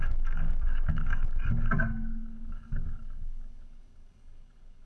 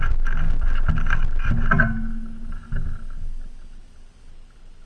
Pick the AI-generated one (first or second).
first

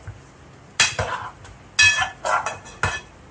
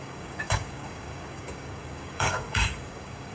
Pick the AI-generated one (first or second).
second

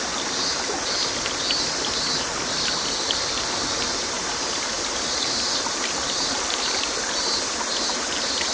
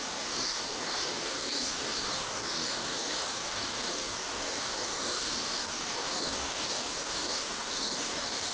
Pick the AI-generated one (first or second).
second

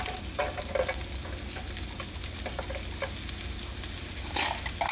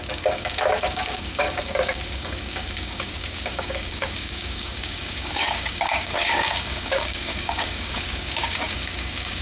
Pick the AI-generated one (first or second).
second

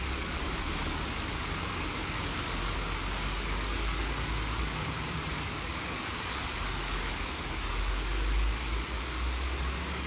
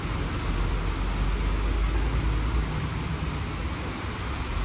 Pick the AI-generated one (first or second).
first